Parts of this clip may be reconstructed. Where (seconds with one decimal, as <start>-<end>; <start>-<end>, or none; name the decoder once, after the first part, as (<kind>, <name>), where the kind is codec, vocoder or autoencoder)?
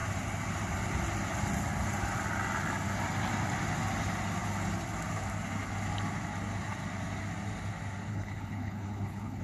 8.1-9.4 (codec, HILCodec)